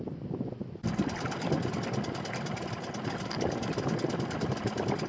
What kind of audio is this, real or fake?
real